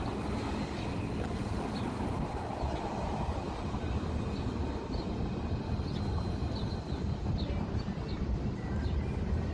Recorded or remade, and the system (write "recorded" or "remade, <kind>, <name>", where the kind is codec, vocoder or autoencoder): recorded